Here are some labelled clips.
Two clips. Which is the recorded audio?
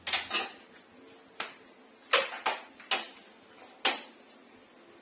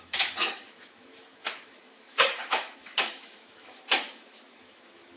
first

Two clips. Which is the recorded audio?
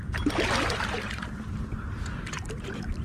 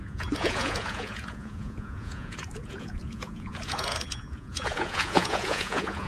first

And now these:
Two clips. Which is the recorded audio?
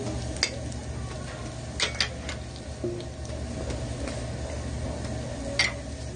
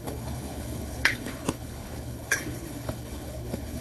first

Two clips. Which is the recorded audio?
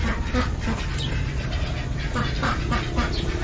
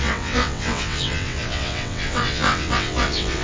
first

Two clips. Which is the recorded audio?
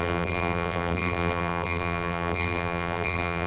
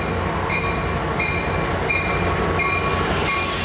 second